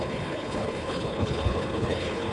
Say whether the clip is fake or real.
fake